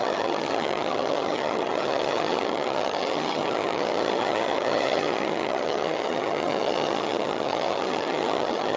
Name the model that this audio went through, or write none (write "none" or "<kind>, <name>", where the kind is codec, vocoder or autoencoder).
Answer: vocoder, HiFi-GAN